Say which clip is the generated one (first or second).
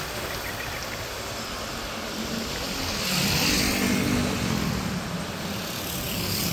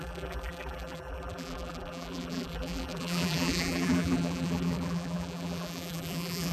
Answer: second